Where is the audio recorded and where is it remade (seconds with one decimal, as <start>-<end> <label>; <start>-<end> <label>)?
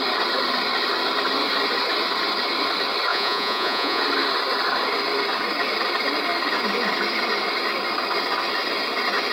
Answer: 0.0-3.1 recorded; 3.1-4.0 remade; 4.0-9.3 recorded